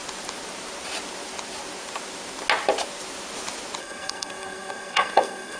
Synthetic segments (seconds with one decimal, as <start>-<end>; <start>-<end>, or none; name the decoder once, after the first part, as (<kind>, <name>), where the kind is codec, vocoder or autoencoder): 3.8-5.6 (codec, SNAC)